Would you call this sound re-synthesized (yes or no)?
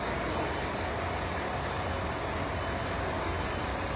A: no